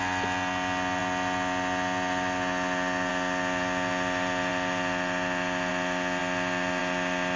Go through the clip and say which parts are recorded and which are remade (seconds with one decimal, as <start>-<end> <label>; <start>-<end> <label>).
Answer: 0.0-7.4 recorded